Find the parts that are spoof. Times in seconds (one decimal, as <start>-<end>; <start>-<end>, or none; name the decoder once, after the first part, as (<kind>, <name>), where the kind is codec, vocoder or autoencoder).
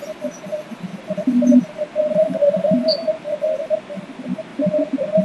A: none